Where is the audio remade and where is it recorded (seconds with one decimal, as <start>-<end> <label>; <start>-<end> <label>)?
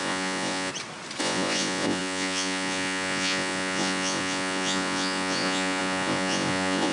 0.0-0.7 remade; 0.7-1.2 recorded; 1.2-6.9 remade